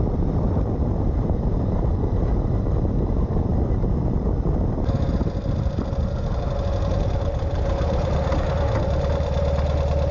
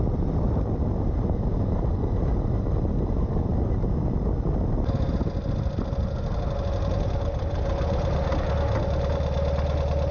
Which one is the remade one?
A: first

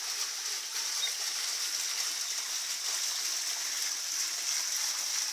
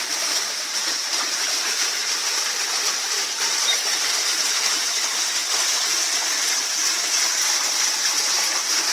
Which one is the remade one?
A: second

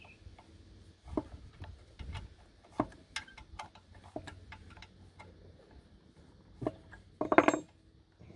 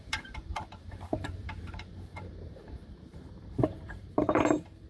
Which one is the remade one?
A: second